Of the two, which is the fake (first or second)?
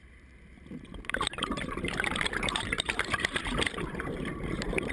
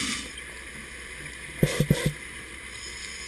first